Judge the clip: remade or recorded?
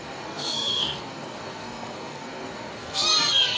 remade